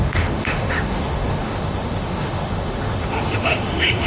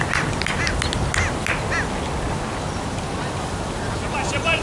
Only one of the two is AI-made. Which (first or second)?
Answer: first